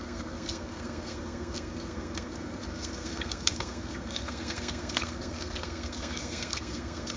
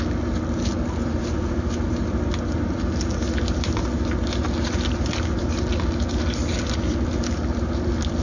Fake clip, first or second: first